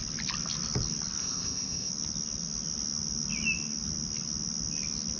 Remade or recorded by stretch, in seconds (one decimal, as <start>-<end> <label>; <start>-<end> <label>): 0.0-1.2 recorded; 1.2-1.9 remade; 1.9-5.2 recorded